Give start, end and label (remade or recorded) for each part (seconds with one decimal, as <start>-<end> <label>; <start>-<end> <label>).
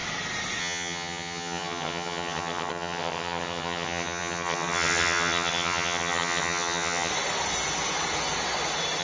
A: 0.0-0.6 recorded; 0.6-7.1 remade; 7.1-9.0 recorded